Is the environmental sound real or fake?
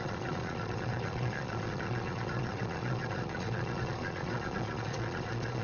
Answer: fake